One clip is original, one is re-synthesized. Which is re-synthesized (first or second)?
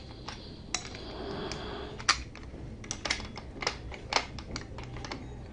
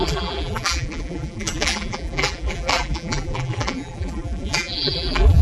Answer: second